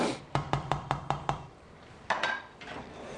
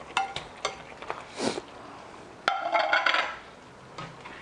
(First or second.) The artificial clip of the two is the first